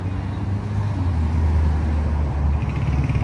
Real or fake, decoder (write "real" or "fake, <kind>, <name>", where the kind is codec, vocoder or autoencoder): real